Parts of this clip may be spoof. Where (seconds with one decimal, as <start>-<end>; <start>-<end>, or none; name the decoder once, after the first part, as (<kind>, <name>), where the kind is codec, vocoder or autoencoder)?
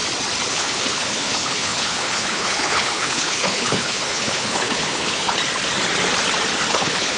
0.5-5.4 (codec, HILCodec); 6.7-7.2